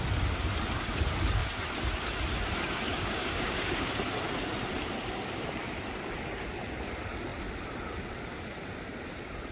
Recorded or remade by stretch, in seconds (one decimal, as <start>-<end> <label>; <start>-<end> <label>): 0.0-2.9 recorded; 2.9-3.9 remade; 3.9-9.5 recorded